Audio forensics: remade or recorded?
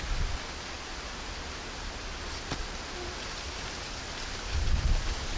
recorded